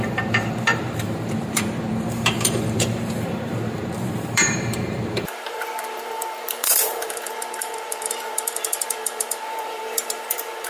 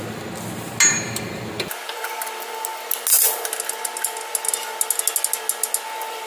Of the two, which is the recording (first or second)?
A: second